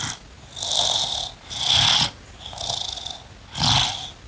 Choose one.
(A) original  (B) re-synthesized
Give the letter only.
A